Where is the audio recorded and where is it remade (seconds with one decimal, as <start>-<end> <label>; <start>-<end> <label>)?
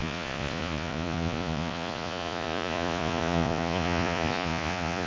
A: 0.0-5.1 remade